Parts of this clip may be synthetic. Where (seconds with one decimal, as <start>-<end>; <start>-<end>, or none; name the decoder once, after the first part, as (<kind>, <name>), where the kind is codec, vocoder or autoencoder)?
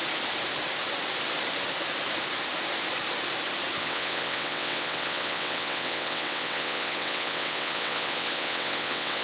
3.8-9.2 (vocoder, WaveNeXt)